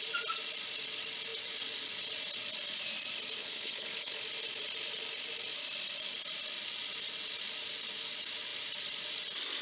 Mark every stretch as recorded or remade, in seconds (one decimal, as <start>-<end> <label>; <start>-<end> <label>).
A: 0.0-3.4 recorded; 3.4-4.2 remade; 4.2-9.6 recorded